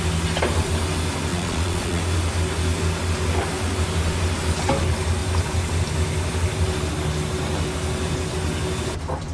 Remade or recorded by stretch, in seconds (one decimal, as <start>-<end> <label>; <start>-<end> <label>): 0.0-1.3 recorded; 1.3-2.0 remade; 2.0-9.3 recorded